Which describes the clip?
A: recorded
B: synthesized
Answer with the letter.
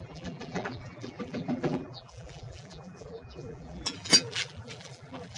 B